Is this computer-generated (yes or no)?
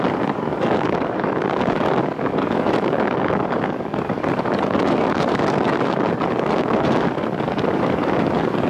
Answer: yes